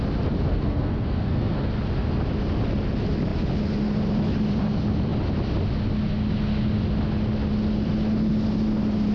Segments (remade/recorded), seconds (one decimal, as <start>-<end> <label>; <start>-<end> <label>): 0.0-0.5 recorded; 0.5-1.7 remade; 1.7-9.1 recorded